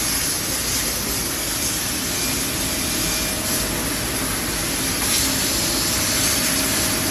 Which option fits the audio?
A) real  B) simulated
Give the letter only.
A